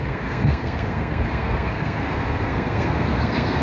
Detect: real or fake fake